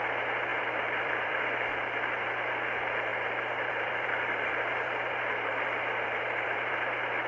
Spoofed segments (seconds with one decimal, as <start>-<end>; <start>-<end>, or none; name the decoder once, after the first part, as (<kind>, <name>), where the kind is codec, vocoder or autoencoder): 0.5-1.6 (vocoder, BigVGAN v2); 3.1-6.7

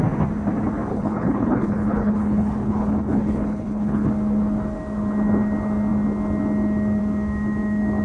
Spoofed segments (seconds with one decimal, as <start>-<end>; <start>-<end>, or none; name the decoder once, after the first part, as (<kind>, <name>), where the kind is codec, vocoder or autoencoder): 0.9-4.1 (codec, HILCodec)